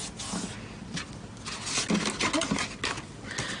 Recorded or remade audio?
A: recorded